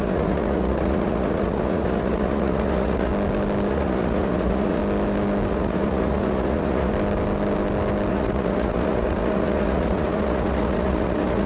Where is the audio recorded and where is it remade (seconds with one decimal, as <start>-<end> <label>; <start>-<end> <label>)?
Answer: 0.0-3.1 remade; 3.1-3.7 recorded; 3.7-4.8 remade; 4.8-5.5 recorded; 5.5-6.9 remade; 6.9-8.1 recorded; 8.1-11.5 remade